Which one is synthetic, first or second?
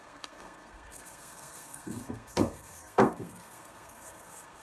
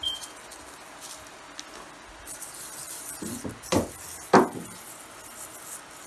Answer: first